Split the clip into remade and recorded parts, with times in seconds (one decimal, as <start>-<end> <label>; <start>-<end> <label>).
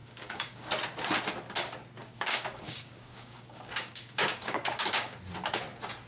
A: 0.0-0.7 remade; 0.7-2.0 recorded; 2.0-5.2 remade; 5.2-6.1 recorded